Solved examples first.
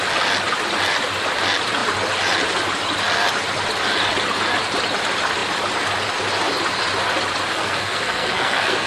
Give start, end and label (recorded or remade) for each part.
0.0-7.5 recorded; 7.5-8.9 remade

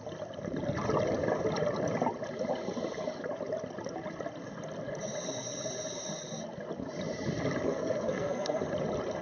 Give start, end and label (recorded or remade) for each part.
0.0-7.7 recorded; 7.7-8.6 remade; 8.6-9.2 recorded

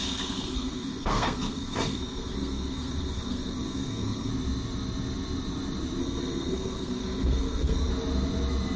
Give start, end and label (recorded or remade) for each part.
0.0-4.3 remade; 4.3-6.0 recorded; 6.0-7.9 remade; 7.9-8.8 recorded